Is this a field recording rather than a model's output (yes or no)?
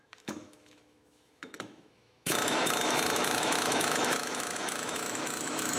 no